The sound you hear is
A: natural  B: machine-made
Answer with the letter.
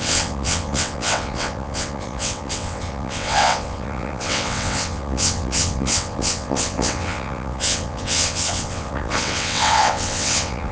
B